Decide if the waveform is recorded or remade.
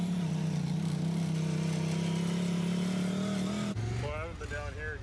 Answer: recorded